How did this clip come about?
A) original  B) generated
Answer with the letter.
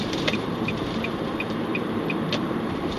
B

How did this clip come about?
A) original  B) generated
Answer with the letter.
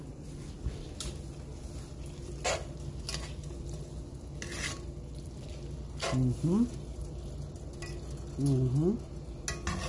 A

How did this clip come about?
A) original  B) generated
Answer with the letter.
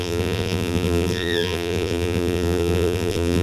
B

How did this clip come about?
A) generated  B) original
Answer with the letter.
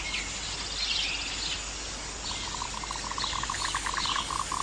B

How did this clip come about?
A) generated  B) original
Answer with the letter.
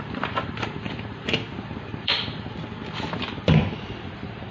A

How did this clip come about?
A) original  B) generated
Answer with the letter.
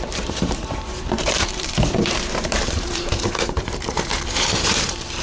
B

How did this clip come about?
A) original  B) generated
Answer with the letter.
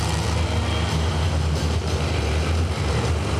A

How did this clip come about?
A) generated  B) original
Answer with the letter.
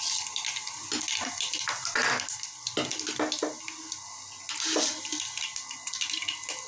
B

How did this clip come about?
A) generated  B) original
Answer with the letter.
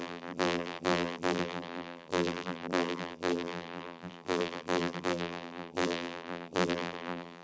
A